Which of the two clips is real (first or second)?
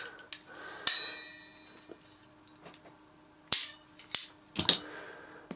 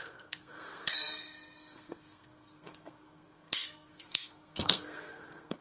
first